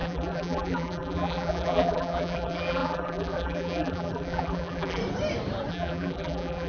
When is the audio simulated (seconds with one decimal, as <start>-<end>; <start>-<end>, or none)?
0.0-5.0; 5.7-6.7